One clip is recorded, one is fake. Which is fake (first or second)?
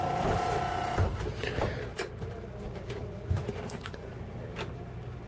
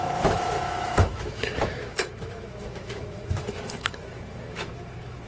second